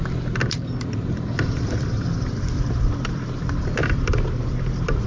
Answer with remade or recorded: remade